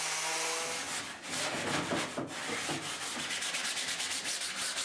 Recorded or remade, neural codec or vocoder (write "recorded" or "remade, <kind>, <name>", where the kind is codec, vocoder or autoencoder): recorded